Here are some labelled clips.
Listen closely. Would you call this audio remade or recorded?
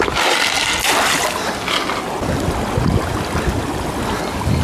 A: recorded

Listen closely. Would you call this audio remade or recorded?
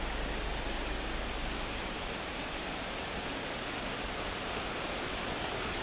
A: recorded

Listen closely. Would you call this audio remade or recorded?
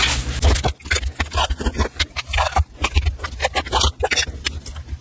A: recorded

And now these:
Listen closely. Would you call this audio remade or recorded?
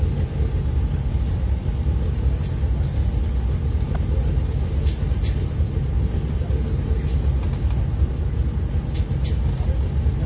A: recorded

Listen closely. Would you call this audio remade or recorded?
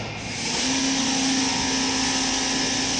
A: recorded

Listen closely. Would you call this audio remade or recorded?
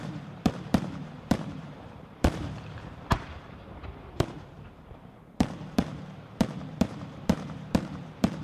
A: remade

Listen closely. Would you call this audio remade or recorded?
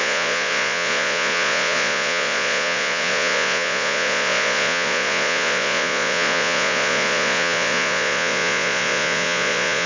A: remade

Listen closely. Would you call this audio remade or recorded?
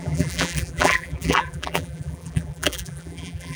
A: remade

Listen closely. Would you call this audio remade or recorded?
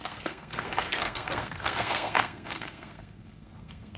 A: remade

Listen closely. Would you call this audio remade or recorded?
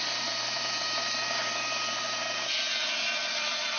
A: remade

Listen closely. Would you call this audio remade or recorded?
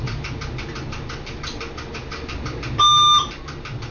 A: recorded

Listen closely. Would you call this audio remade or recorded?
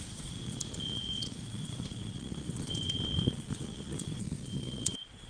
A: remade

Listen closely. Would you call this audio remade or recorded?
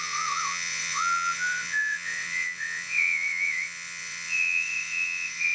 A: remade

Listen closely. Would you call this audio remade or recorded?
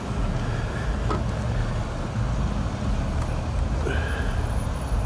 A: recorded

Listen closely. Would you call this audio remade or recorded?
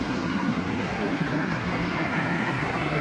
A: remade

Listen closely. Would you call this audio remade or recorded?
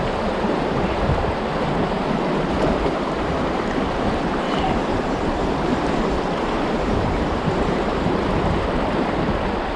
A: remade